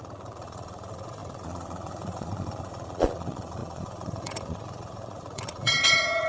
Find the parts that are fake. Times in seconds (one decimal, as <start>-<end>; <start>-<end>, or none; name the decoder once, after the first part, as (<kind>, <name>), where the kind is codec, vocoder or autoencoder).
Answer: 0.0-6.3 (vocoder, Vocos)